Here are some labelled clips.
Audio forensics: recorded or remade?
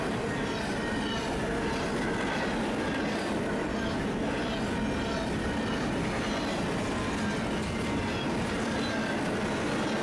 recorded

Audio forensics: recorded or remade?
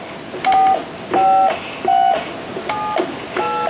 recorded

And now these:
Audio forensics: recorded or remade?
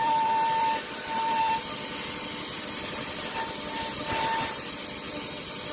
remade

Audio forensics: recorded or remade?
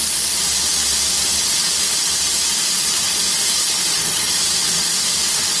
recorded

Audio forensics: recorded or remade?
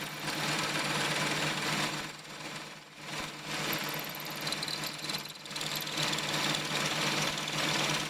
recorded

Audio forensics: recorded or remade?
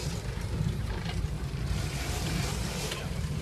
remade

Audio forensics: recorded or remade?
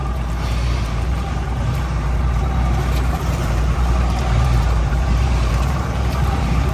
remade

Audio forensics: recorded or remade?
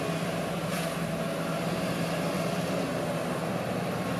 recorded